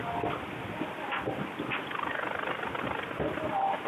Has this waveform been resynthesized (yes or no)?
no